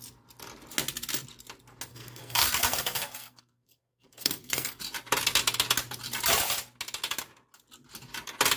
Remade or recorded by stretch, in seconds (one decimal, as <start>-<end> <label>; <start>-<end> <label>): 0.0-1.9 recorded; 1.9-4.8 remade; 4.8-8.6 recorded